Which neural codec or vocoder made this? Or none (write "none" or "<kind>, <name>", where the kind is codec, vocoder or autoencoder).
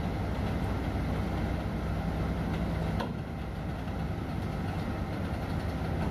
none